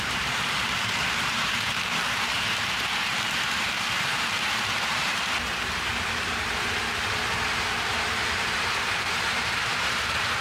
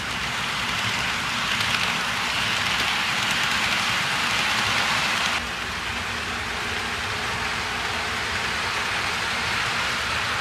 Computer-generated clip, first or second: first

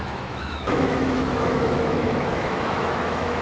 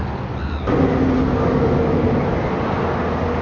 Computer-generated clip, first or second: first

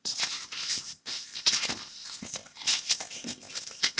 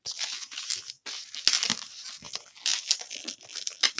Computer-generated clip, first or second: first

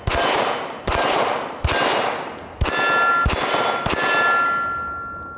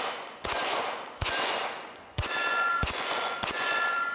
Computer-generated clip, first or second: second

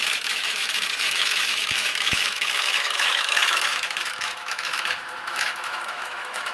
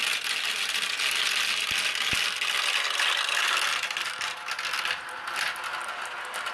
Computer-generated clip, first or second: first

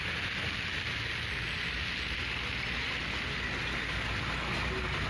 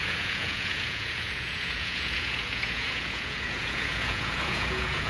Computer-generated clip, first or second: second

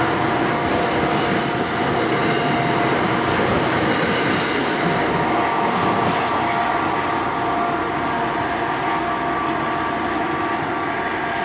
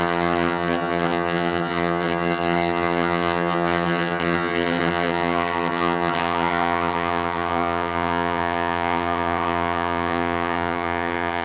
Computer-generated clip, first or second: second